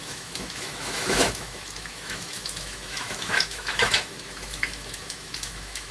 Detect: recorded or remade remade